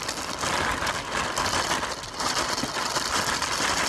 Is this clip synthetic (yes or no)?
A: no